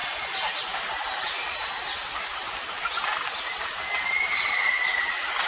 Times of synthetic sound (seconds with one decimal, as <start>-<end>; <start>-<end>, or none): none